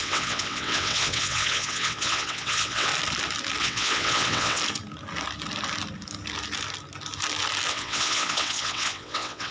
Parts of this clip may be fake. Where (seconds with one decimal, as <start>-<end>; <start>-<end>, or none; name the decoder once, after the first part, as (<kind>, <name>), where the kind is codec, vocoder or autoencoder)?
0.0-2.9 (vocoder, WaveNeXt); 3.6-4.6; 7.7-9.5